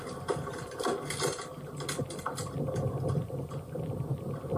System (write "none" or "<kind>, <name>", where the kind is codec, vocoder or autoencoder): none